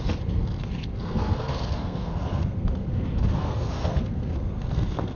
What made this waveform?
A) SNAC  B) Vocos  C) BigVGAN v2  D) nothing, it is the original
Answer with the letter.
A